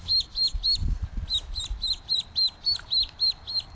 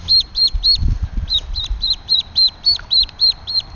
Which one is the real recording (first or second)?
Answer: first